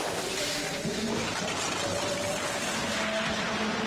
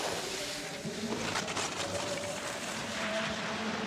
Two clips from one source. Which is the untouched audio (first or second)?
first